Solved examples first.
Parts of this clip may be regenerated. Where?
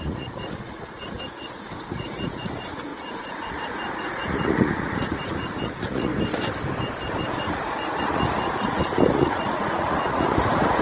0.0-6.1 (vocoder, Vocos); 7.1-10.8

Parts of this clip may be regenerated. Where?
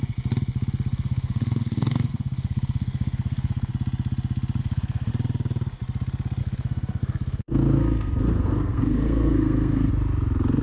0.9-3.7 (codec, SNAC); 4.6-5.1; 6.4-9.9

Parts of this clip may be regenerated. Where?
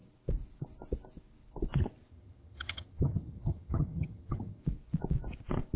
2.1-4.6 (vocoder, HiFi-GAN)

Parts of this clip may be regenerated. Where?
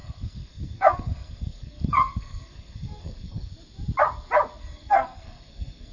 0.0-3.5 (codec, SNAC); 4.6-5.9